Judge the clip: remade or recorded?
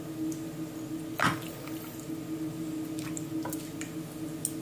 recorded